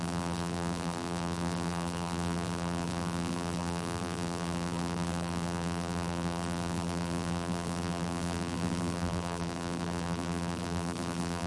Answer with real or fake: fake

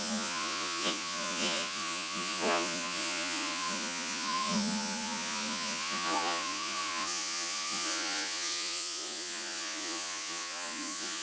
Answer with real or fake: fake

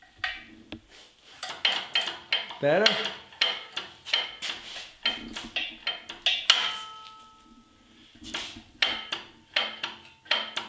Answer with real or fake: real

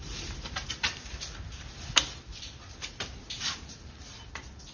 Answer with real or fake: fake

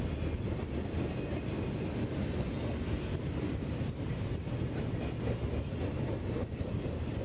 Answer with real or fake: real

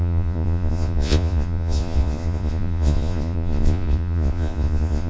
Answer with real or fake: fake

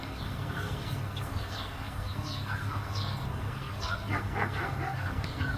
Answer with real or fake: fake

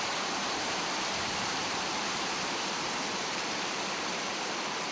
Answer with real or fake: fake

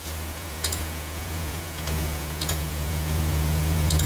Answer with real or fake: fake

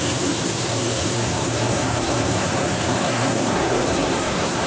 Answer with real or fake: fake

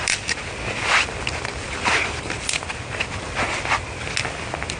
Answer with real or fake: real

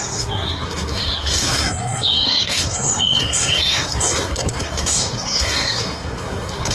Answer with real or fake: fake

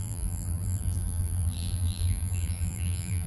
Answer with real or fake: fake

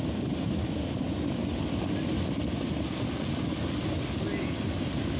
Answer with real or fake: real